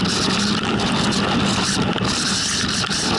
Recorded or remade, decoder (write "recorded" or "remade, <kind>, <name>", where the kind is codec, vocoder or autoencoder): recorded